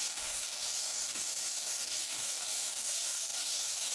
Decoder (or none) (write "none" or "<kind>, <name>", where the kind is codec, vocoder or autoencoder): codec, DAC